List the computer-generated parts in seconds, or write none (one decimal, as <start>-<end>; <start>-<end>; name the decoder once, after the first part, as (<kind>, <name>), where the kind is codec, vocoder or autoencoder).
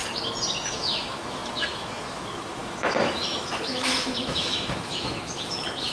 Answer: 0.7-5.9 (autoencoder, DAC-VAE)